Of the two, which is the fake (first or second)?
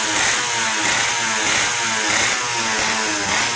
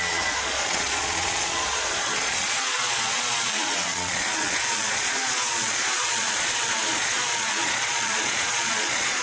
second